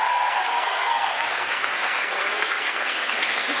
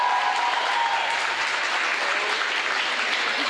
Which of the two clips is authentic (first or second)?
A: second